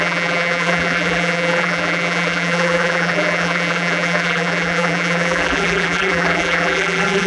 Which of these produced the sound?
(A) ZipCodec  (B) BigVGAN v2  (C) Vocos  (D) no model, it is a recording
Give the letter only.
B